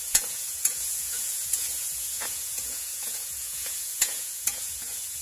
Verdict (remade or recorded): remade